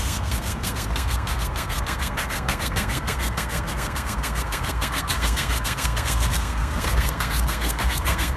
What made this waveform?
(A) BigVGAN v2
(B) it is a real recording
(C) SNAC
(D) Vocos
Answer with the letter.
C